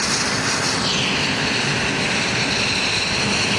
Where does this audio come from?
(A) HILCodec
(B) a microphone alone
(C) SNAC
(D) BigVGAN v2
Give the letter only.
B